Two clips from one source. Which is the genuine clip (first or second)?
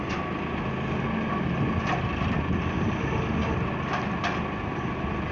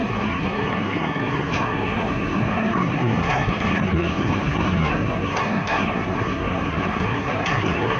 first